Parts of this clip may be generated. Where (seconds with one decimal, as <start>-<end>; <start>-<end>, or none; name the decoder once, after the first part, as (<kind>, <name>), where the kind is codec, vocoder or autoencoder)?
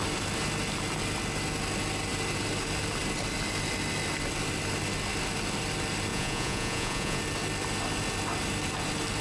6.1-7.2 (vocoder, Vocos)